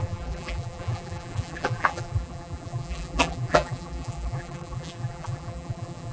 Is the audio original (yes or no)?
no